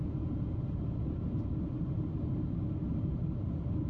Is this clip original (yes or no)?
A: yes